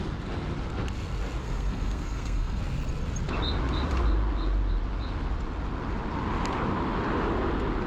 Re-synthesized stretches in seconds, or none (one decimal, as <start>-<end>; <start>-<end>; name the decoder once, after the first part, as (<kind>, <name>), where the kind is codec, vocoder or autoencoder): 1.4-2.6 (codec, SNAC)